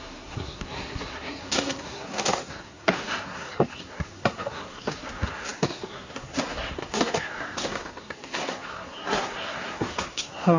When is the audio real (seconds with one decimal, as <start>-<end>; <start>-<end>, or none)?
none